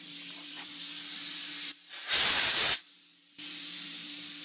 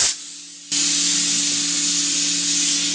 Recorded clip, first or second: second